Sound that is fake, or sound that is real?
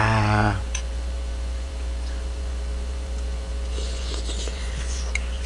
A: fake